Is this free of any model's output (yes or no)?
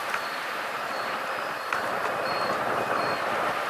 no